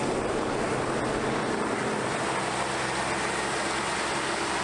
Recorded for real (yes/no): yes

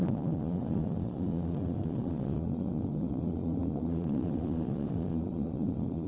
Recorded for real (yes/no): no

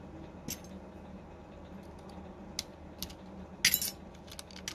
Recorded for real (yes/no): yes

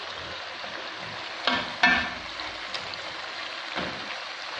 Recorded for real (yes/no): yes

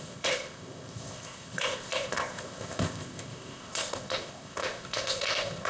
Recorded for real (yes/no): no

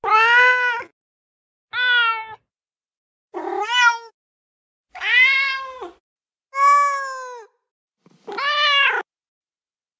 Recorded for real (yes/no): yes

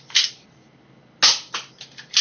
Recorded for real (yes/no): yes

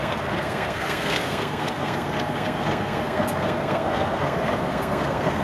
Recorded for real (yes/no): no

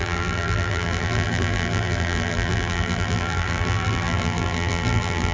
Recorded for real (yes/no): no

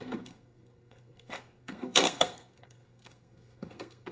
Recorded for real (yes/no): no